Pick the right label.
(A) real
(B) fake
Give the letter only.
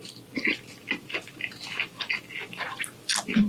A